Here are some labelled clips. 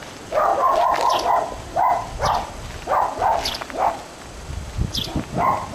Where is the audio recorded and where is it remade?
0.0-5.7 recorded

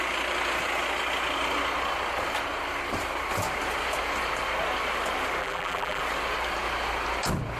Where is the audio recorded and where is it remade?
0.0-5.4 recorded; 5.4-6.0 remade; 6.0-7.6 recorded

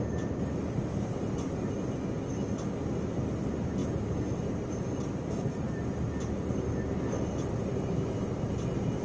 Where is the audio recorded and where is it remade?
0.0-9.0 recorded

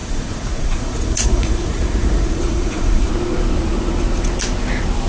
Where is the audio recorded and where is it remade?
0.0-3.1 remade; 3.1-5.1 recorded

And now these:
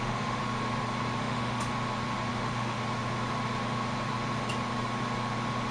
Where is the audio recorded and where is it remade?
0.0-0.4 remade; 0.4-1.2 recorded; 1.2-1.7 remade; 1.7-2.3 recorded; 2.3-2.8 remade; 2.8-5.7 recorded

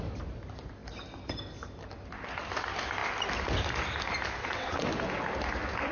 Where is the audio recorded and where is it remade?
0.0-4.4 recorded; 4.4-4.9 remade; 4.9-5.9 recorded

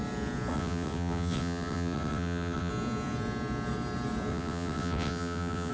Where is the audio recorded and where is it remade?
0.0-0.5 recorded; 0.5-2.7 remade; 2.7-4.3 recorded; 4.3-5.7 remade